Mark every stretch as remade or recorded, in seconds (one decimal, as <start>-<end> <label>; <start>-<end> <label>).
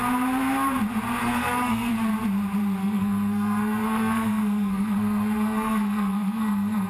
0.0-1.2 recorded; 1.2-1.9 remade; 1.9-2.8 recorded; 2.8-6.9 remade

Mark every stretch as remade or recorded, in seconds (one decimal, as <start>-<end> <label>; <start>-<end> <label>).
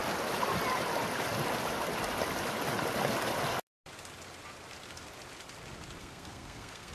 0.0-6.0 recorded; 6.0-6.9 remade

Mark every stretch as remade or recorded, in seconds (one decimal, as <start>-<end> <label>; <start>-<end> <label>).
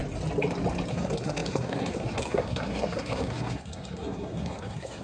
0.0-0.9 recorded; 0.9-5.0 remade